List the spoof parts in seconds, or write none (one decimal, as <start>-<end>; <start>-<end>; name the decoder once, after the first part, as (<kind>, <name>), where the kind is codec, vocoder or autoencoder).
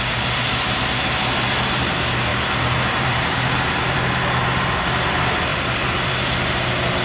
2.3-4.1 (vocoder, BigVGAN v2); 5.5-6.1